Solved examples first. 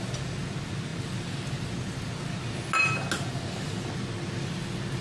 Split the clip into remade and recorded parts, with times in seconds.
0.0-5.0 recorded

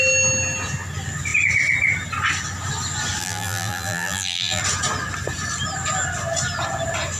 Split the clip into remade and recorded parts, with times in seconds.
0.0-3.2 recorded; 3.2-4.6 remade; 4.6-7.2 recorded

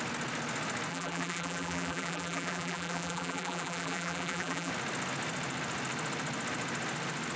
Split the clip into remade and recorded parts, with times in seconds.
0.0-0.9 recorded; 0.9-4.7 remade; 4.7-7.4 recorded

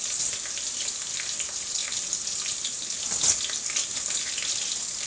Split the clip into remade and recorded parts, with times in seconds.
0.0-5.1 recorded

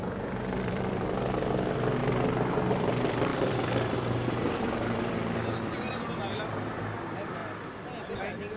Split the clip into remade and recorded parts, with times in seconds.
0.0-2.0 remade; 2.0-2.7 recorded; 2.7-7.4 remade; 7.4-8.2 recorded; 8.2-8.6 remade